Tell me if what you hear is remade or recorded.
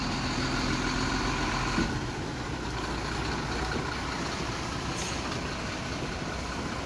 recorded